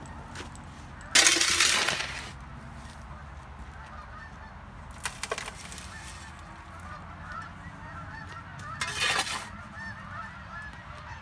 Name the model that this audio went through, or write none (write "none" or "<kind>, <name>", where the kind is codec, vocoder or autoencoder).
none